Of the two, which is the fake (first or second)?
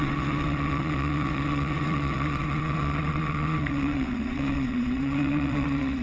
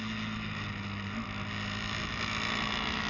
first